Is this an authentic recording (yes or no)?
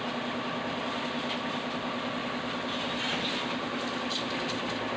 yes